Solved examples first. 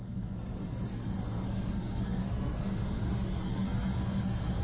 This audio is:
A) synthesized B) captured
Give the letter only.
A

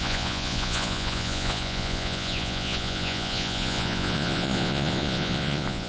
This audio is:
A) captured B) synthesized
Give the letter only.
B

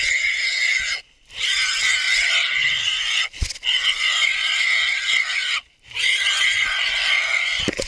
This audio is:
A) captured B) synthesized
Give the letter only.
A